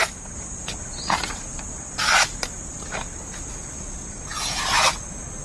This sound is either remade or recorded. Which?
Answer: recorded